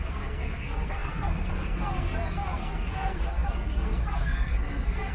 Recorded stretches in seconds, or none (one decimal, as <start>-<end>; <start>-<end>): none